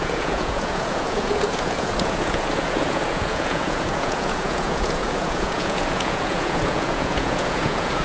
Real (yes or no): no